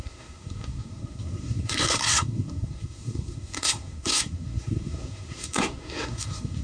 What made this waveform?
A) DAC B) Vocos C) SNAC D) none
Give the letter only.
C